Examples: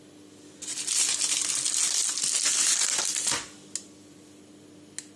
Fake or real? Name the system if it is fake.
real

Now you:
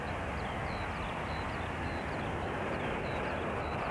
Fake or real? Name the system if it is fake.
real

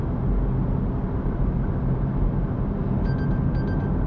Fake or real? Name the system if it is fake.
real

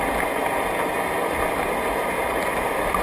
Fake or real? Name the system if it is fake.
real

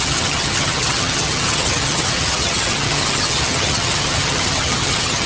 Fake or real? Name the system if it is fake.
fake, vocoder, HiFi-GAN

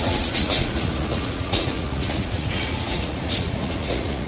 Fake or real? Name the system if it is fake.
fake, vocoder, Vocos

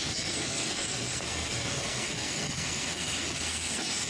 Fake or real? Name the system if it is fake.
fake, codec, SNAC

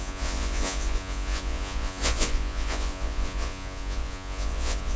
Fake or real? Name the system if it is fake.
fake, vocoder, Vocos